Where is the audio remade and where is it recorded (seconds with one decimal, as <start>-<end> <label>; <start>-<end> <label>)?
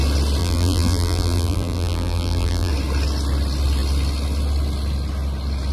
0.0-0.4 recorded; 0.4-2.7 remade; 2.7-5.7 recorded